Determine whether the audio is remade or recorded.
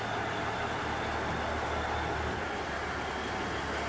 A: recorded